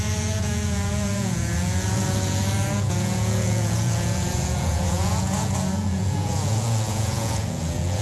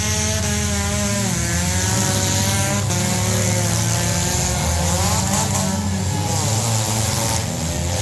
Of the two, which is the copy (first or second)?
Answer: first